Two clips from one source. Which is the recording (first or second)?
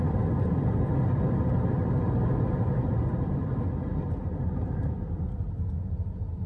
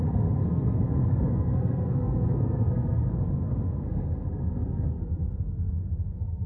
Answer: first